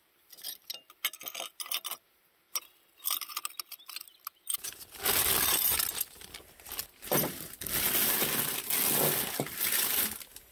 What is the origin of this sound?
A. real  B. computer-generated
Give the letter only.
A